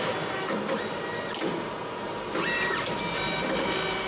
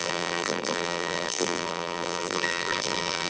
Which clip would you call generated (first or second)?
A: second